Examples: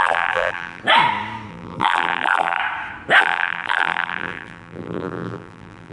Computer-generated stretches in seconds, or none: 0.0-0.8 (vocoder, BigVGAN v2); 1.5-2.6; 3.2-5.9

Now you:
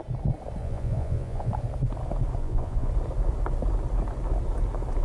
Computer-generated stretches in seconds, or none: 0.6-1.5 (vocoder, Vocos); 2.4-2.9

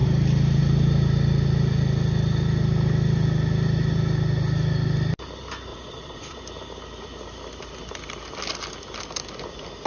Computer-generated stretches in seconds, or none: 5.7-6.4 (vocoder, Vocos)

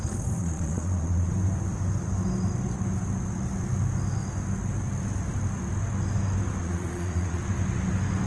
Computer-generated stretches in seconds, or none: 0.4-1.3 (vocoder, Vocos); 6.6-7.4